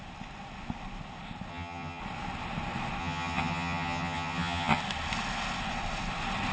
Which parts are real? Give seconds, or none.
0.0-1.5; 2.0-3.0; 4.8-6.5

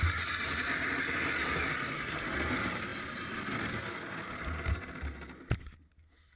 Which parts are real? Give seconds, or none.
0.0-6.4

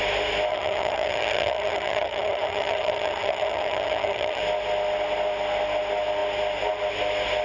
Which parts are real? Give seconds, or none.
0.0-0.5; 4.4-7.4

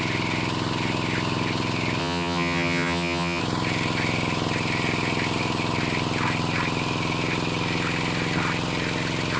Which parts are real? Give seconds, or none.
0.0-2.0; 3.4-9.4

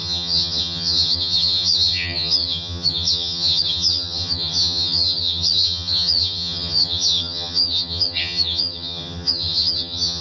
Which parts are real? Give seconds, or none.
none

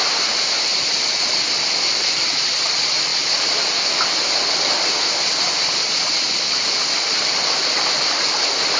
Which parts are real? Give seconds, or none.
0.0-8.8